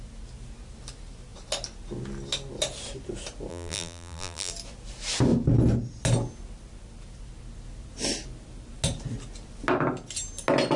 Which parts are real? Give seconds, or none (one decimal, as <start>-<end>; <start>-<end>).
0.0-3.5; 4.5-10.8